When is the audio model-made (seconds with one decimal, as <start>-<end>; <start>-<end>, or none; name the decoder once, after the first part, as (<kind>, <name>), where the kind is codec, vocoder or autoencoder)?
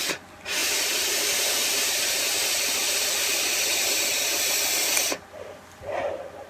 0.6-4.5 (vocoder, BigVGAN v2); 5.0-6.0